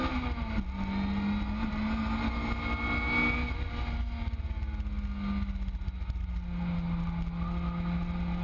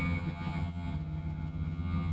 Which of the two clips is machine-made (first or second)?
second